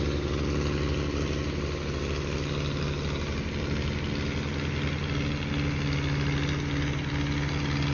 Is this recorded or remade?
recorded